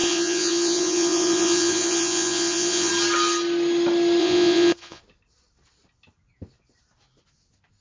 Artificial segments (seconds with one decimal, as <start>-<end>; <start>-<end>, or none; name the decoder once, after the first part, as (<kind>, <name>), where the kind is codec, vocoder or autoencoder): 0.0-2.9 (vocoder, Vocos); 4.2-5.0